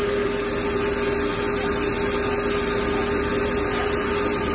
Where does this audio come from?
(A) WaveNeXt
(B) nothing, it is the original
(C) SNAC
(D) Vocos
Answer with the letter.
B